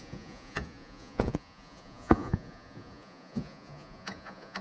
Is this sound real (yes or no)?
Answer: no